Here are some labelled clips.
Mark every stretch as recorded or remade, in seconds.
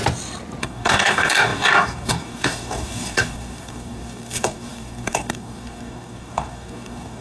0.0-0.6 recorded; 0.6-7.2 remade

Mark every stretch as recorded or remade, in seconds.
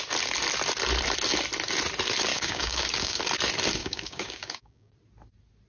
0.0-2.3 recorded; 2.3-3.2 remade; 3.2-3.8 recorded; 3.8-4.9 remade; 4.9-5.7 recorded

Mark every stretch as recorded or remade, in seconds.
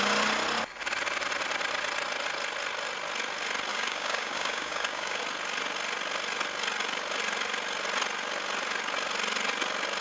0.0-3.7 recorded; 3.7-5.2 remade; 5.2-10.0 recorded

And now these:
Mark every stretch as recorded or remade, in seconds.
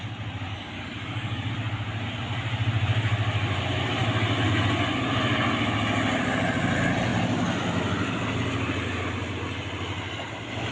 0.0-0.5 recorded; 0.5-1.5 remade; 1.5-10.7 recorded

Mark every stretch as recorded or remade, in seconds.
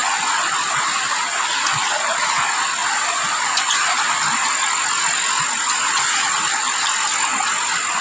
0.0-8.0 recorded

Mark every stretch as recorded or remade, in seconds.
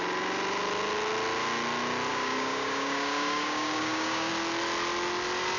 0.0-2.1 recorded; 2.1-4.3 remade; 4.3-5.6 recorded